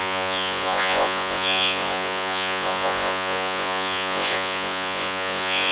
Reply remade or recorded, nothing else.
remade